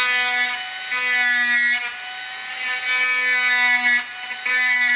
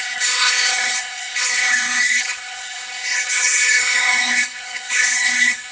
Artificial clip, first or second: second